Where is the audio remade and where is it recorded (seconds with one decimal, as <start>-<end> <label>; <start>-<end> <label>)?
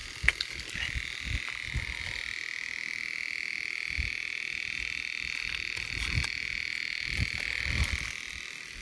0.0-8.8 recorded